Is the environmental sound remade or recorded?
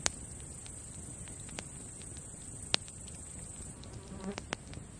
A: recorded